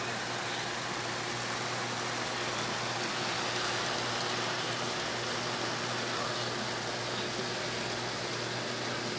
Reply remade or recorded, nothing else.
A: recorded